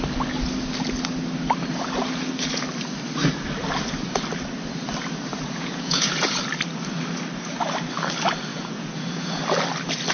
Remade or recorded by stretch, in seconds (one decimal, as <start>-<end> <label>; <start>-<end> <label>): 0.0-5.3 recorded; 5.3-6.4 remade; 6.4-8.5 recorded; 8.5-9.4 remade; 9.4-10.1 recorded